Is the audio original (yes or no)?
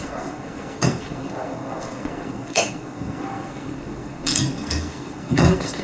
no